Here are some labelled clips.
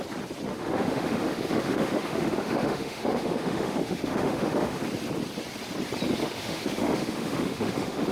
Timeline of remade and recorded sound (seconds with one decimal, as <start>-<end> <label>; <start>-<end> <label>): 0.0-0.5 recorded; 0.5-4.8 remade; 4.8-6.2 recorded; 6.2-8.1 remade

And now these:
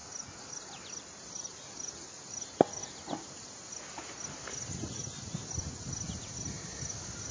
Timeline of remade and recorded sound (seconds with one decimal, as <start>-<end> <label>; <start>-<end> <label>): 0.0-7.3 recorded

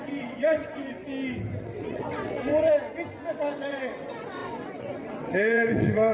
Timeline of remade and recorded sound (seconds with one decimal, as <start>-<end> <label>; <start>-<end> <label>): 0.0-1.0 remade; 1.0-1.6 recorded; 1.6-2.5 remade; 2.5-3.3 recorded; 3.3-6.1 remade

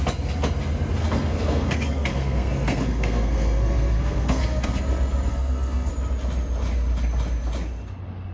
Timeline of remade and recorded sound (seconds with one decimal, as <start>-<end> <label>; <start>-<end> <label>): 0.0-1.0 recorded; 1.0-4.8 remade; 4.8-5.3 recorded; 5.3-5.9 remade; 5.9-8.3 recorded